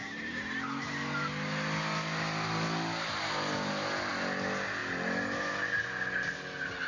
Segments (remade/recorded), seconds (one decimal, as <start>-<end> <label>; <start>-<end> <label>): 0.0-6.9 recorded